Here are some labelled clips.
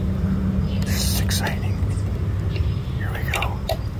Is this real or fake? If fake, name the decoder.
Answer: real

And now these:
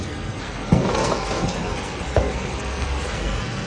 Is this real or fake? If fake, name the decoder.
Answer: fake, codec, SNAC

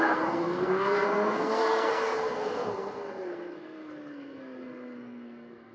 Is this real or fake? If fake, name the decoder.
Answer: fake, codec, SNAC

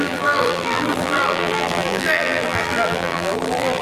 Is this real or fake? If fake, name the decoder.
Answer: fake, vocoder, BigVGAN v2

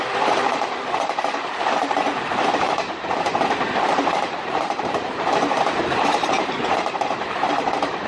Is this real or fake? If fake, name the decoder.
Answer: fake, vocoder, BigVGAN v2